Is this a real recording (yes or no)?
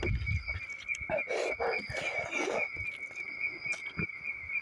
yes